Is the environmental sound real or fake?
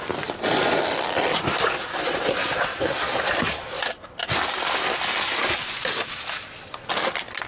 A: real